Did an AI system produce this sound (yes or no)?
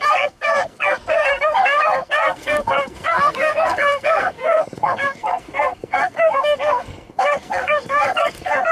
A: yes